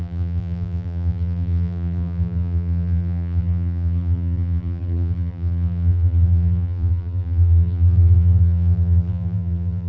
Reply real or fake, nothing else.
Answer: fake